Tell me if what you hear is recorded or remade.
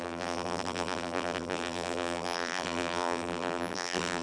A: remade